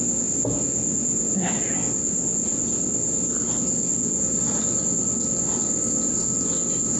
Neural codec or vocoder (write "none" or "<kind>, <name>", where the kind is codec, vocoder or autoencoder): none